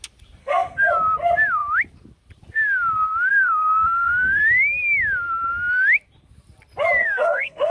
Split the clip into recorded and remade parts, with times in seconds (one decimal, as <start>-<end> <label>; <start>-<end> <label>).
0.0-0.4 recorded; 0.4-0.9 remade; 0.9-3.3 recorded; 3.3-4.4 remade; 4.4-7.0 recorded; 7.0-7.7 remade